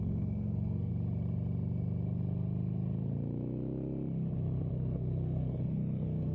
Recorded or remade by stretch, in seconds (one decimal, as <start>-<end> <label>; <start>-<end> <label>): 0.0-0.9 remade; 0.9-4.7 recorded; 4.7-6.3 remade